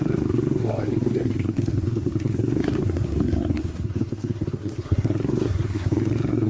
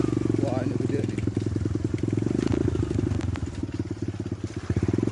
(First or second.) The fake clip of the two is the first